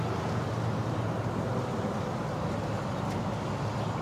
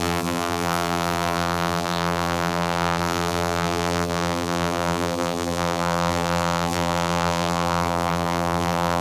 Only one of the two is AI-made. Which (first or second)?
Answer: second